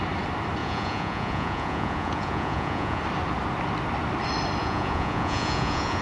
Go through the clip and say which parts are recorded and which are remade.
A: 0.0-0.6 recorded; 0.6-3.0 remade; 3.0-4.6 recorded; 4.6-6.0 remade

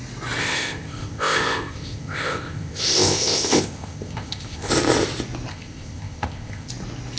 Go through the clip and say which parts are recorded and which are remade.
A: 0.0-0.4 recorded; 0.4-4.7 remade; 4.7-5.5 recorded; 5.5-6.7 remade; 6.7-7.2 recorded

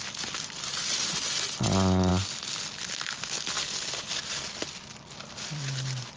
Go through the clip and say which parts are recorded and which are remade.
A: 0.0-6.2 recorded

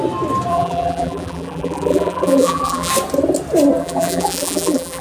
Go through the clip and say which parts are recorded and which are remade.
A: 0.0-0.5 recorded; 0.5-2.9 remade; 2.9-3.8 recorded; 3.8-5.0 remade

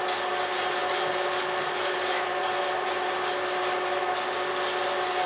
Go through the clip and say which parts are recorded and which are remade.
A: 0.0-5.3 recorded

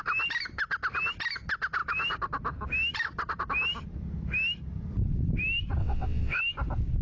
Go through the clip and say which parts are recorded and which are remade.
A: 0.0-5.8 recorded; 5.8-6.4 remade; 6.4-7.0 recorded